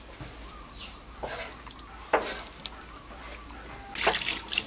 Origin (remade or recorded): recorded